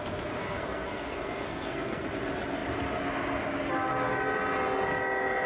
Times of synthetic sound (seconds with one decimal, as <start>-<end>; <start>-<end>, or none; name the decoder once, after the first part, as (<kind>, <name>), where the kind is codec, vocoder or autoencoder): 0.4-2.1 (codec, SNAC)